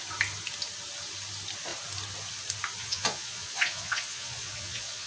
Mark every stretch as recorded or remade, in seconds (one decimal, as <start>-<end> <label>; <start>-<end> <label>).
0.0-2.8 recorded; 2.8-5.1 remade